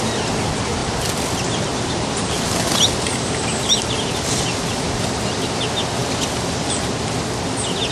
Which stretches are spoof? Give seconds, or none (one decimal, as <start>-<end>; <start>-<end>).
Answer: 0.8-5.0; 6.0-6.9